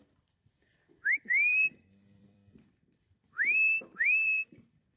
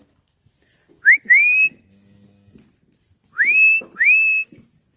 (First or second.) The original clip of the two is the second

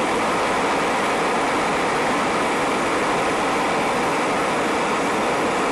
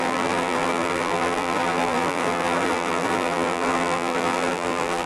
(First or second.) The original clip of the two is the first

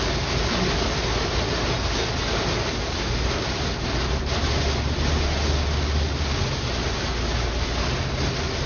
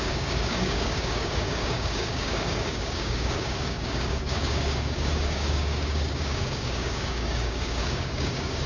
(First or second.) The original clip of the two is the first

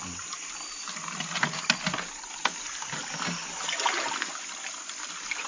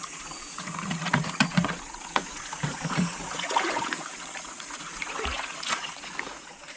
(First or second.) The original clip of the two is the first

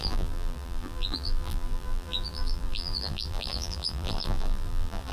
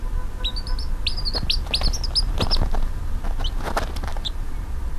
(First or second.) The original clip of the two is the second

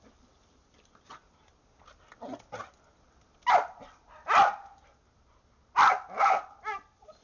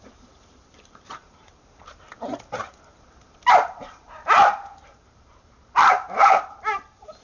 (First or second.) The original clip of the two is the first